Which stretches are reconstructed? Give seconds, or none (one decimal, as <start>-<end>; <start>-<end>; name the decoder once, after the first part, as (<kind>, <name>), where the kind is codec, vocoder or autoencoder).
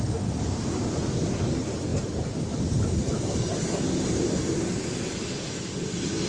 none